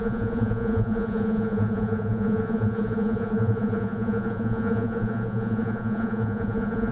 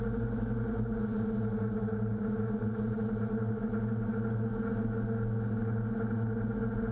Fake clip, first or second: first